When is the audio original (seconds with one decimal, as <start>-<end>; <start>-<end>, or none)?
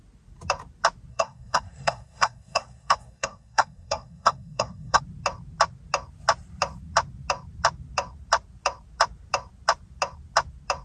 0.0-1.1; 5.0-10.8